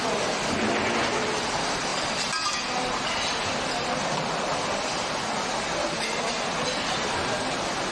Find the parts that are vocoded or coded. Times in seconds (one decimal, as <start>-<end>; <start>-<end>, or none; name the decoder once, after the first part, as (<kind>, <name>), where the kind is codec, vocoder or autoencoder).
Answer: none